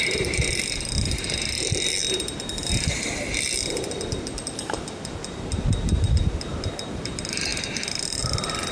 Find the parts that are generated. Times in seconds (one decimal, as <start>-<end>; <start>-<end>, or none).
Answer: none